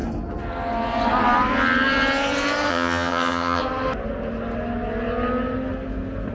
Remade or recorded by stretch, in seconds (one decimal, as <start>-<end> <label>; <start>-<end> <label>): 0.0-2.7 recorded; 2.7-3.6 remade; 3.6-6.3 recorded